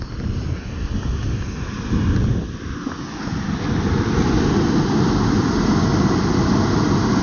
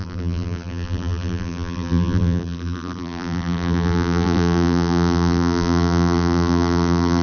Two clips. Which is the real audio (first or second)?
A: first